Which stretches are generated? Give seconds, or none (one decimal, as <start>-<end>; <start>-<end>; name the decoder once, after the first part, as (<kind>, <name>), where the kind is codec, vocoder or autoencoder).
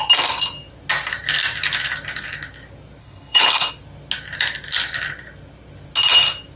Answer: 3.0-3.7 (codec, HILCodec)